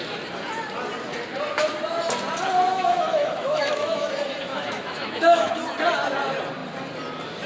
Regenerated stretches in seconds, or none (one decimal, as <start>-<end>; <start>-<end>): 2.7-4.1; 4.5-5.5